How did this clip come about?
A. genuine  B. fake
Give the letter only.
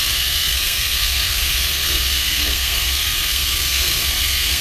B